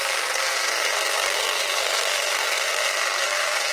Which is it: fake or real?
fake